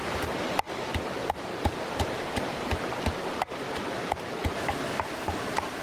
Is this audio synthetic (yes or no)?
no